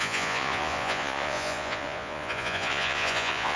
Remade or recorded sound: remade